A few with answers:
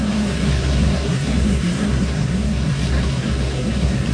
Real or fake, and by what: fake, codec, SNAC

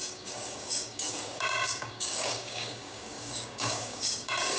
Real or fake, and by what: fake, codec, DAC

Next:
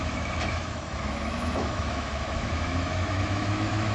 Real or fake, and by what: fake, autoencoder, DAC-VAE